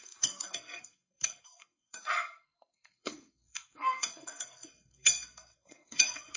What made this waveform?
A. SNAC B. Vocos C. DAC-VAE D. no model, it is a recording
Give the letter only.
A